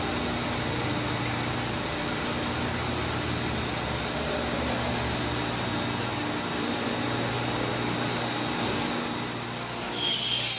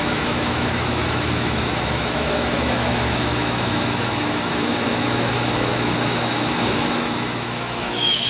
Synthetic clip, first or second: second